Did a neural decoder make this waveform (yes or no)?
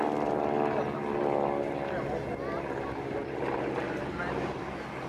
no